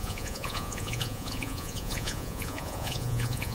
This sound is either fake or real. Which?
fake